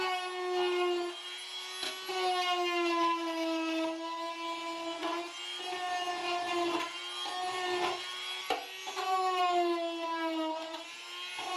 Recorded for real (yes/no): yes